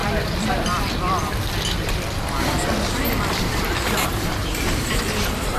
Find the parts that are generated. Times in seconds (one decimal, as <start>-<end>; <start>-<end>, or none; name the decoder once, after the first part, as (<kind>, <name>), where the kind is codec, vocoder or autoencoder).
3.4-5.6 (vocoder, BigVGAN v2)